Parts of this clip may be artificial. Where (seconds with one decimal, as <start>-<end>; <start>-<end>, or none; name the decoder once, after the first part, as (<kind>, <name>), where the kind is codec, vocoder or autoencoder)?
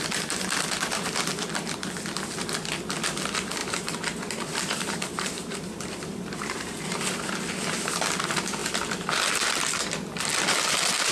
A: 3.6-7.0 (vocoder, BigVGAN v2)